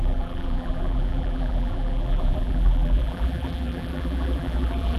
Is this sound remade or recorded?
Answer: remade